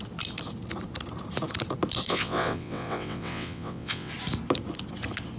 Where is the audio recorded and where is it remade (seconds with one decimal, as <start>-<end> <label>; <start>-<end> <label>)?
0.0-2.1 recorded; 2.1-4.1 remade; 4.1-5.4 recorded